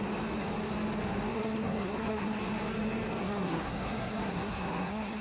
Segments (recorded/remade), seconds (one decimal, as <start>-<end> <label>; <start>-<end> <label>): 0.0-1.3 recorded; 1.3-2.4 remade; 2.4-3.2 recorded; 3.2-5.2 remade